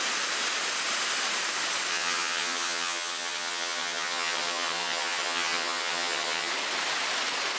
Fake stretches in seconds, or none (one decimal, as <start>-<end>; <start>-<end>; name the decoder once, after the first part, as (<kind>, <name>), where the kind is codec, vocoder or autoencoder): 1.9-6.5 (vocoder, HiFi-GAN)